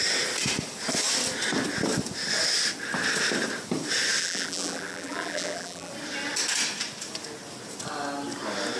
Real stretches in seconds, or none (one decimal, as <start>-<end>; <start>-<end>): 0.0-4.2; 5.9-8.8